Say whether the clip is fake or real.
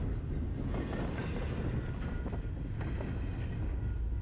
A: real